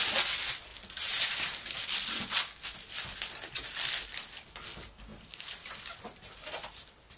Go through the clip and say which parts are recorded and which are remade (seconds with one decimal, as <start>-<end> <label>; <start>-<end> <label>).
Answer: 0.0-5.1 recorded; 5.1-5.8 remade; 5.8-7.2 recorded